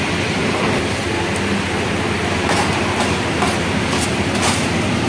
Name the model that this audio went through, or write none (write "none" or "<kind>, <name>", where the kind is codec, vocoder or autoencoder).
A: none